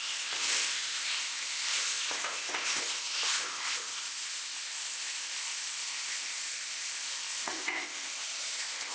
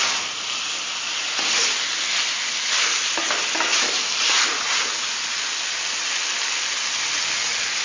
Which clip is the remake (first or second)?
first